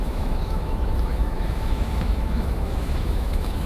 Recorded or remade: remade